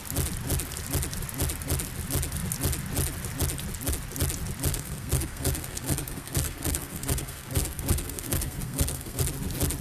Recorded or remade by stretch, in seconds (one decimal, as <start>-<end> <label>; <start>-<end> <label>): 0.0-4.7 recorded; 4.7-9.2 remade; 9.2-9.8 recorded